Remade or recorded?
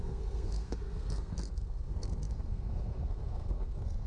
remade